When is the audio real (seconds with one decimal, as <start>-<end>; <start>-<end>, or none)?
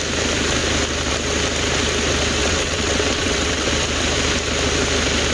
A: 0.0-2.4; 3.7-5.3